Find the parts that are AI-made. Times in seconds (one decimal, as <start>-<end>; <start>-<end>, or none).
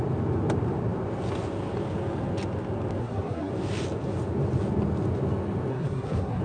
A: 3.0-3.5; 5.7-6.4